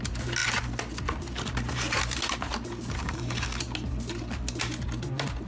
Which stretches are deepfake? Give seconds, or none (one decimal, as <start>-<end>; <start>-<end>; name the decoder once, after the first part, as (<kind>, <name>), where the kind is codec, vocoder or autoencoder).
3.0-3.6 (codec, DAC)